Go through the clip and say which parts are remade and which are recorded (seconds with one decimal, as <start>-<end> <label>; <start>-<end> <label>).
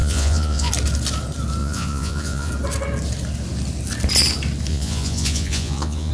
0.0-0.7 remade; 0.7-1.6 recorded; 1.6-2.5 remade; 2.5-4.7 recorded; 4.7-6.1 remade